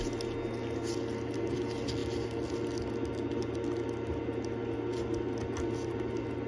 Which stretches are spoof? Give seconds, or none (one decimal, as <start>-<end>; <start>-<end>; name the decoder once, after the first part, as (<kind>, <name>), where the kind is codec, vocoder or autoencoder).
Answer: none